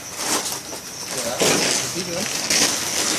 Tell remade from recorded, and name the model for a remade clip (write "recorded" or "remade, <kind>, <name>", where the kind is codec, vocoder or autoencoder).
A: recorded